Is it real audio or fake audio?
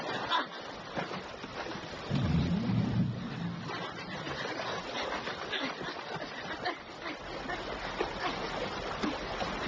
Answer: real